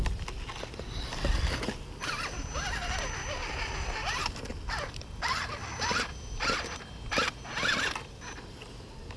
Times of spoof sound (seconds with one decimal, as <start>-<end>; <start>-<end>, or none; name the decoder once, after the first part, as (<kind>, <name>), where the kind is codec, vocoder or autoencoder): none